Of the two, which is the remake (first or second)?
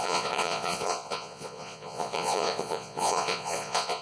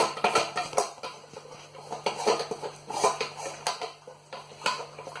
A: first